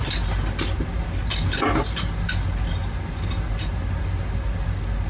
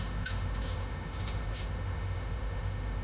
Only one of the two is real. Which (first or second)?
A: first